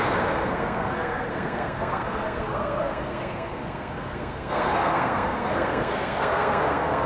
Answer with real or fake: fake